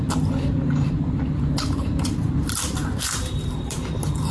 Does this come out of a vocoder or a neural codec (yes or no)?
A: yes